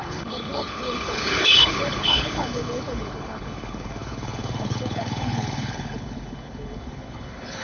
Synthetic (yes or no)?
yes